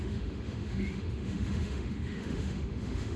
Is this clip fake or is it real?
fake